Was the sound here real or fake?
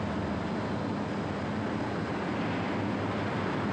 real